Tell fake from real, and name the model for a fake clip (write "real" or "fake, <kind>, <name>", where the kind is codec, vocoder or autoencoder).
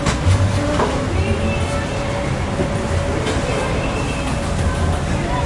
real